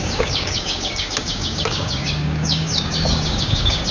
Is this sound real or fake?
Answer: fake